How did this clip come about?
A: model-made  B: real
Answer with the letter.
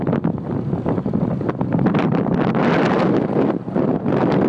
B